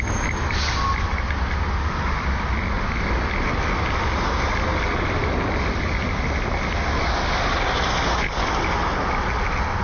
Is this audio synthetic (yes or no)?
no